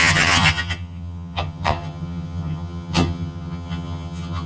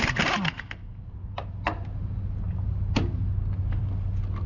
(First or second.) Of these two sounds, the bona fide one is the second